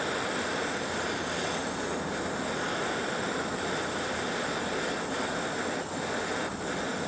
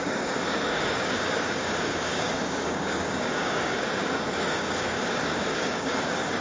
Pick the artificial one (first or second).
second